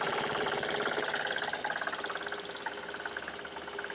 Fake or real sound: real